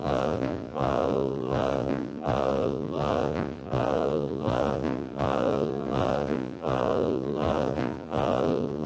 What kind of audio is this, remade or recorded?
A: remade